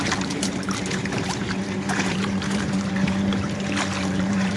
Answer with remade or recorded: remade